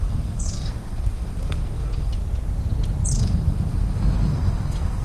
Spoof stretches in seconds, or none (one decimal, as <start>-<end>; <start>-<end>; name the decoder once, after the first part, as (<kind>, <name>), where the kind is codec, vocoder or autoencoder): 0.0-2.2 (codec, SNAC); 3.2-5.0